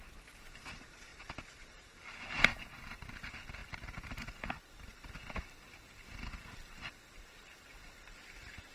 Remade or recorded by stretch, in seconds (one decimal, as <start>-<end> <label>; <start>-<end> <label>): 0.0-1.1 recorded; 1.1-2.0 remade; 2.0-8.7 recorded